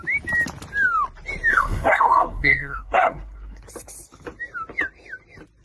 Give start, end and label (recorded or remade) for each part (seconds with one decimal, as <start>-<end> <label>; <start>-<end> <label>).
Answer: 0.0-1.5 recorded; 1.5-3.6 remade; 3.6-5.6 recorded